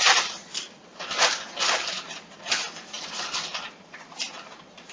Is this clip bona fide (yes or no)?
no